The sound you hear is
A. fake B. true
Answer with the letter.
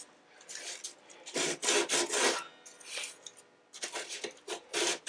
B